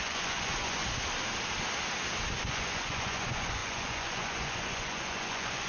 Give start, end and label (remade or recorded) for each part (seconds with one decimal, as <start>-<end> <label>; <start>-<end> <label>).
0.0-0.8 remade; 0.8-2.4 recorded; 2.4-5.7 remade